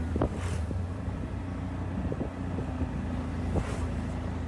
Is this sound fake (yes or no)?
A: no